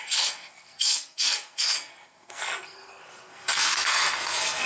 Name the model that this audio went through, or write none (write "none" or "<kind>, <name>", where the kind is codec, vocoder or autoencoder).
codec, SNAC